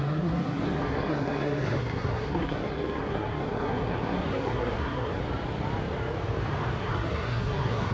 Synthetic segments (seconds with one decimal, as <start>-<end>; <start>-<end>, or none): 0.0-5.2; 6.8-7.9